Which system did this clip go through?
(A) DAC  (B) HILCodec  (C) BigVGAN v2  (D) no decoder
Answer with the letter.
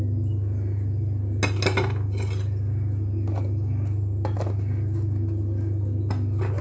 D